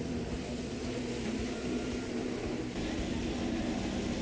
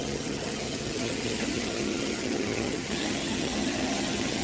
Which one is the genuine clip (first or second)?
first